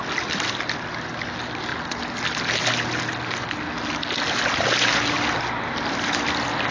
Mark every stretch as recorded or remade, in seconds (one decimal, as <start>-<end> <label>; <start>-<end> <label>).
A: 0.0-6.7 recorded